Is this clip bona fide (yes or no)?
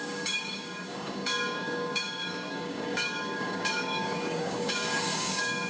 no